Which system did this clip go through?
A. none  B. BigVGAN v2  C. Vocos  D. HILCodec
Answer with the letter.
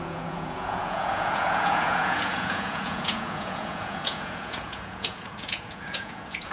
C